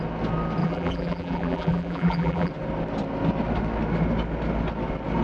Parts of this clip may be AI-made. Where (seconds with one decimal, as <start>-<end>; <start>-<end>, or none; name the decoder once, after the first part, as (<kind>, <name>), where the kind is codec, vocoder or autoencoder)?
0.6-2.5 (vocoder, BigVGAN v2)